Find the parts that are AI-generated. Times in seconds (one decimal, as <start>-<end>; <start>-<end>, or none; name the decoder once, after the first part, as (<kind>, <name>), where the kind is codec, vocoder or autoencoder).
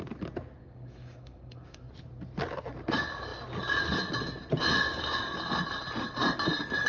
0.6-1.9 (codec, DAC)